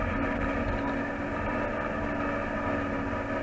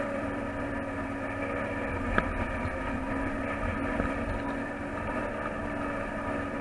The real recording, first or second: first